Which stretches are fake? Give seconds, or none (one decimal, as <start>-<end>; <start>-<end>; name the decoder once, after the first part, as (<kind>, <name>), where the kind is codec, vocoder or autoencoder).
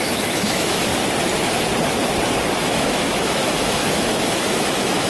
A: 0.0-0.9 (autoencoder, DAC-VAE); 2.6-5.1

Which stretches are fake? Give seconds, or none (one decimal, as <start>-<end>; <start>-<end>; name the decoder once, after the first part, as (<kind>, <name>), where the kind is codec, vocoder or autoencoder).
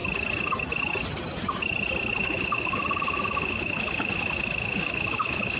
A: 2.2-5.6 (autoencoder, DAC-VAE)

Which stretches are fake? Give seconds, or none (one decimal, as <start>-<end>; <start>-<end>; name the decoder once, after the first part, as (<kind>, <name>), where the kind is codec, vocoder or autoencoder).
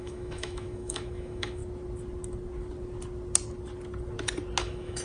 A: 0.0-1.6 (autoencoder, DAC-VAE); 4.6-5.0